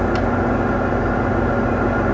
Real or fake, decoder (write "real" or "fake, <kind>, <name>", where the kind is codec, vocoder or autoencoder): real